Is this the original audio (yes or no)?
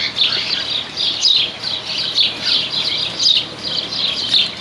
yes